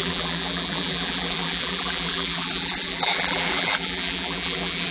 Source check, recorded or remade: remade